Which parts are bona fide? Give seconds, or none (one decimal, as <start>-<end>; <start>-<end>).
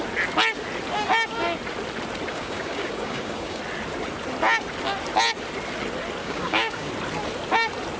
0.0-2.3; 3.6-6.2; 6.9-8.0